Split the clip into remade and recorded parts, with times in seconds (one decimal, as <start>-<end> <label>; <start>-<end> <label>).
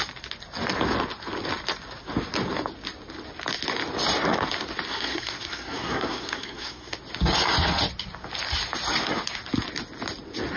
0.0-4.9 recorded; 4.9-6.9 remade; 6.9-10.6 recorded